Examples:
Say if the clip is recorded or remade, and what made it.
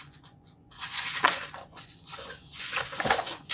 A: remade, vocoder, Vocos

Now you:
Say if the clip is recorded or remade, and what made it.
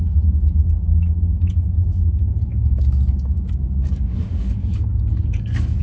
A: remade, codec, DAC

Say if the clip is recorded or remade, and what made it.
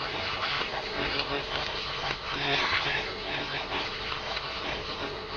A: remade, codec, SNAC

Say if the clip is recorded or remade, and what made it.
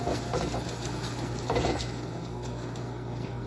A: remade, codec, SNAC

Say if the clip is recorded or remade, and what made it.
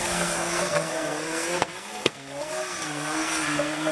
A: remade, codec, SNAC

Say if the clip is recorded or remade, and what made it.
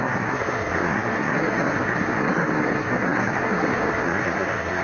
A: remade, codec, SNAC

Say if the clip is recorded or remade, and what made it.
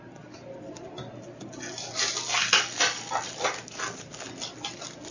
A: recorded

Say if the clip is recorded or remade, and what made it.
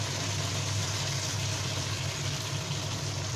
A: recorded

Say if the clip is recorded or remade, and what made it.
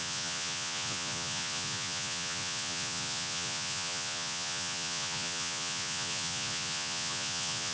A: remade, vocoder, Vocos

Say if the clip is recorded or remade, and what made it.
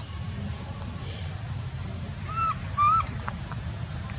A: remade, vocoder, BigVGAN v2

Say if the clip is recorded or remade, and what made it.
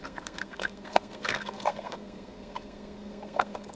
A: remade, codec, SNAC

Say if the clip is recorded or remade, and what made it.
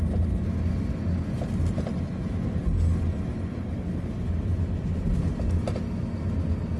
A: recorded